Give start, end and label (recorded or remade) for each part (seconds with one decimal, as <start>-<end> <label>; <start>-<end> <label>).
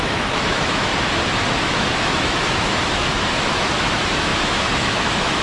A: 0.0-0.9 remade; 0.9-1.5 recorded; 1.5-5.4 remade